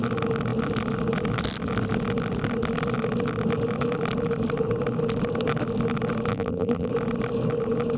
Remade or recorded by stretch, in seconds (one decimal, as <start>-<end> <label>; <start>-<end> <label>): 0.0-6.3 recorded; 6.3-6.9 remade; 6.9-8.0 recorded